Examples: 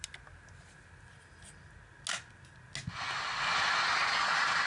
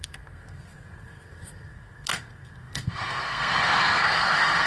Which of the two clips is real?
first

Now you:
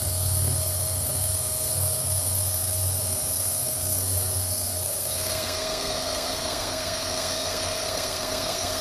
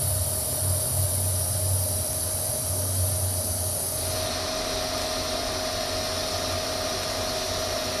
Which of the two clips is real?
second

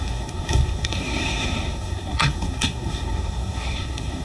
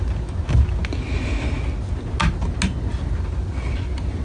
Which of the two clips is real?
second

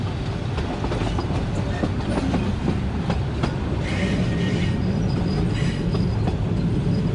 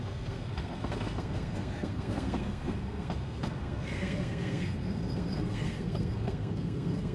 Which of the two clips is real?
first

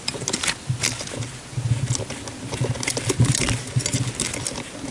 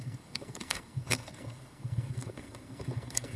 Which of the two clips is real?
first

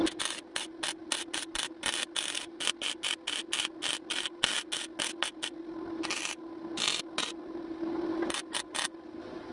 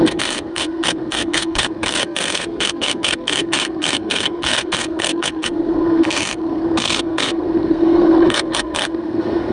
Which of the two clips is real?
first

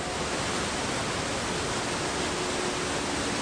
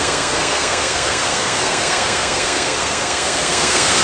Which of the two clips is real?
first